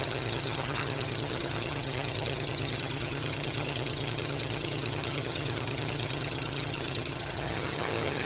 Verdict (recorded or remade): remade